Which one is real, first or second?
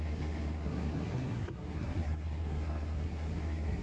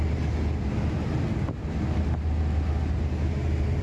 second